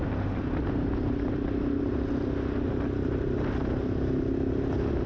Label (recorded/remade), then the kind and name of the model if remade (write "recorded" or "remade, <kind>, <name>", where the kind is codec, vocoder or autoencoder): recorded